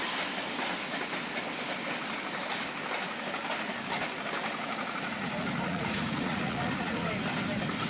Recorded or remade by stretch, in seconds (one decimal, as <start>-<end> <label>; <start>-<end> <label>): 0.0-4.6 recorded; 4.6-7.1 remade; 7.1-7.9 recorded